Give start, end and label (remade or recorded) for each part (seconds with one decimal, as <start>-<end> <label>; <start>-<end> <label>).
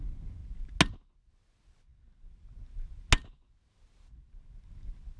0.0-5.2 recorded